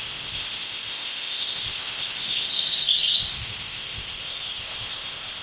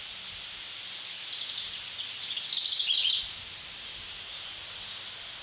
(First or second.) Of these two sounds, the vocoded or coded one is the first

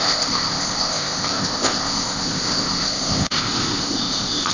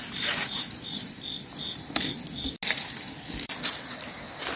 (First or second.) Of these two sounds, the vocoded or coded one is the first